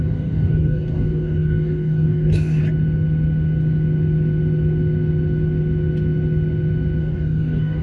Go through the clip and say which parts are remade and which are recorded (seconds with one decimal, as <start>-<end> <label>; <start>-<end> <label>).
0.0-2.6 remade; 2.6-7.0 recorded; 7.0-7.8 remade